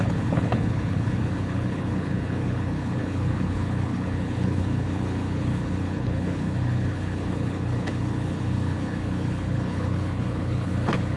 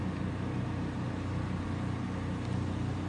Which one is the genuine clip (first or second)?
second